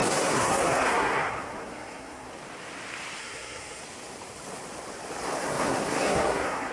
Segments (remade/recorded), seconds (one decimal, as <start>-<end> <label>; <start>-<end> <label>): 0.0-2.3 remade; 2.3-3.2 recorded; 3.2-3.8 remade; 3.8-5.4 recorded; 5.4-6.7 remade